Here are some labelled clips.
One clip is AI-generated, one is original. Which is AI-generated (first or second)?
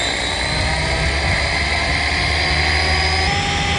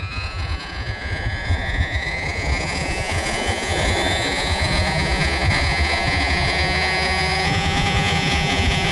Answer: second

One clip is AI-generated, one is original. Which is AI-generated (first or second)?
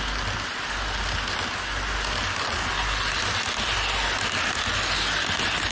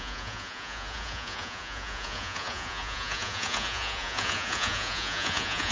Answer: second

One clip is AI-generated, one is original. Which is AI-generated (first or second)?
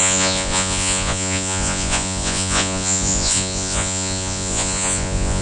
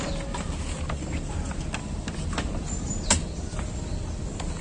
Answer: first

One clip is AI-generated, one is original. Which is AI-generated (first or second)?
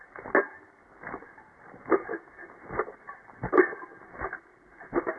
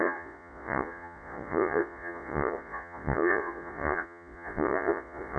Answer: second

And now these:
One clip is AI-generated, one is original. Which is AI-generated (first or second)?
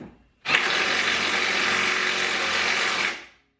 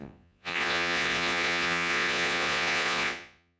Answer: second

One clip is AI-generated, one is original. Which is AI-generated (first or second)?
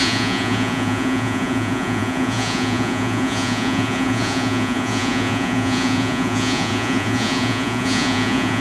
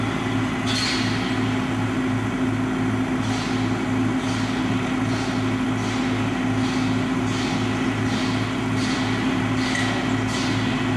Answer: first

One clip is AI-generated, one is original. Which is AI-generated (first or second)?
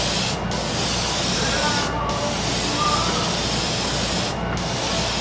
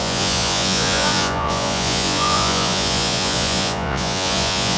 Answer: second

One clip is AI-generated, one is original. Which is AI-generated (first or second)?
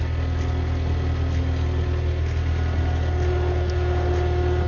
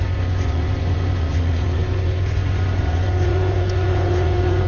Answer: second